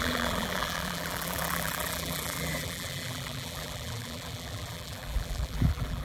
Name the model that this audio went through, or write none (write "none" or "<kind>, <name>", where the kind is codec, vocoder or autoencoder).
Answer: vocoder, BigVGAN v2